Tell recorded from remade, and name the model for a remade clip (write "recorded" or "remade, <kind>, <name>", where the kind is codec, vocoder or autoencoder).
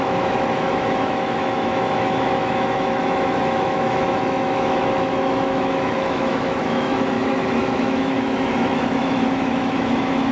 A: remade, autoencoder, DAC-VAE